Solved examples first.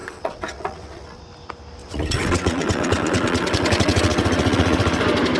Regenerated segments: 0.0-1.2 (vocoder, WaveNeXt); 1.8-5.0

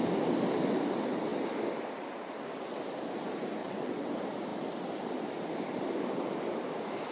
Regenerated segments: 3.6-4.1 (vocoder, WaveNeXt)

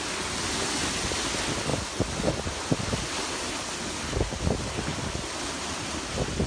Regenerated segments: none

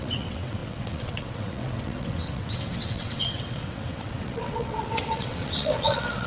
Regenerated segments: 0.0-6.3 (vocoder, WaveNeXt)

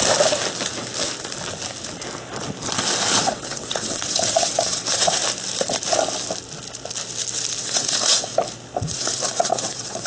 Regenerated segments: 3.2-5.2 (vocoder, WaveNeXt); 7.6-8.3; 8.8-10.1

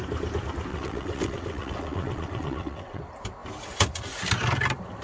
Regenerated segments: 0.7-3.0 (vocoder, WaveNeXt)

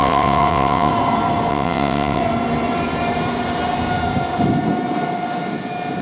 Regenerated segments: 0.0-0.9 (vocoder, WaveNeXt); 1.5-2.2

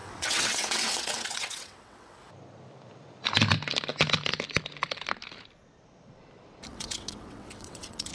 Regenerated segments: 0.0-2.2 (vocoder, WaveNeXt); 6.7-8.1